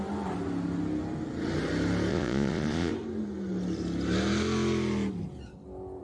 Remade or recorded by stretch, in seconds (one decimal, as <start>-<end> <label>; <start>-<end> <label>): 0.0-2.1 recorded; 2.1-2.9 remade; 2.9-6.0 recorded